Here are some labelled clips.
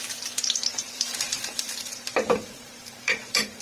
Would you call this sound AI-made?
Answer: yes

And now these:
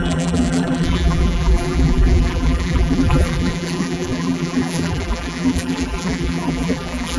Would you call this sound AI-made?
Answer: yes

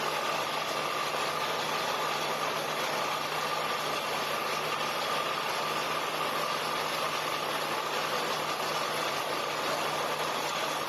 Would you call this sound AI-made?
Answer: no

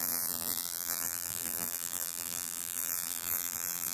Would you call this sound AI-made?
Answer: yes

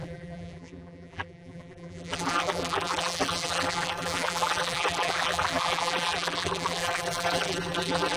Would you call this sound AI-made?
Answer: yes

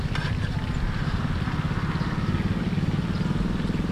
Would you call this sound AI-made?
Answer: no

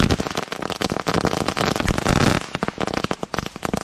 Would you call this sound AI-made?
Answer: no